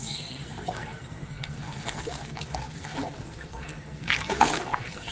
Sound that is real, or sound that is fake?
fake